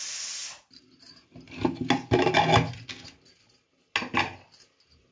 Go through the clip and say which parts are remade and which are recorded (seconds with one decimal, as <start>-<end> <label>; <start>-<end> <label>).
0.0-5.1 recorded